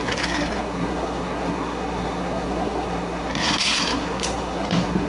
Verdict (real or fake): fake